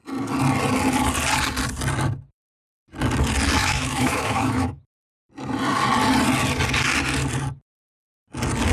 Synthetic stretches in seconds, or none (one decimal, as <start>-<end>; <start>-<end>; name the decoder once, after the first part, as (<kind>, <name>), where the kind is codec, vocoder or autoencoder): 3.6-4.8 (autoencoder, DAC-VAE)